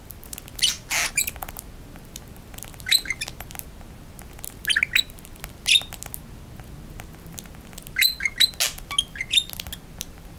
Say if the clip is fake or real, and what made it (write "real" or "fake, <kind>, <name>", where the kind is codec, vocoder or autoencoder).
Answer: real